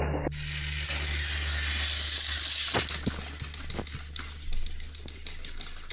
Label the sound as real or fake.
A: real